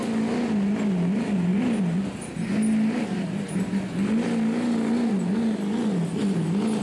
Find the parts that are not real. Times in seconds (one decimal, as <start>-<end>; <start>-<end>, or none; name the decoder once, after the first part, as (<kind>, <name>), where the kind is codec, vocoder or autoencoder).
none